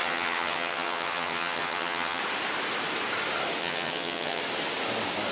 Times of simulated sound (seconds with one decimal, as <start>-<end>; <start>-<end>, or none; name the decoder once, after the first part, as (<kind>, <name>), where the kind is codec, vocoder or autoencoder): 0.0-2.2 (vocoder, HiFi-GAN); 3.6-4.4